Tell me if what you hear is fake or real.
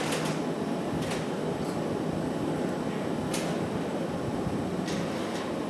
real